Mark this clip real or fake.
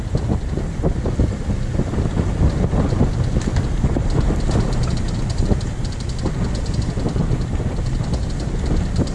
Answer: real